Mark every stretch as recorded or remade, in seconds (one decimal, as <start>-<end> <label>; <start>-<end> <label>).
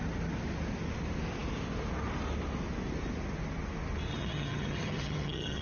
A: 0.0-4.1 recorded; 4.1-5.6 remade